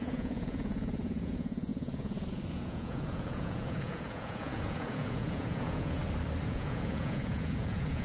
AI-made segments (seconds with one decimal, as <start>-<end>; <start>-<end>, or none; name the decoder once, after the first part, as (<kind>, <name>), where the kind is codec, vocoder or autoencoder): 0.0-6.0 (vocoder, Vocos); 6.5-8.0